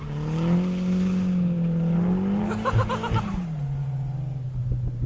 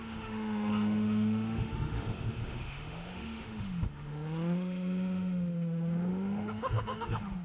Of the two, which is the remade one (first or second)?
second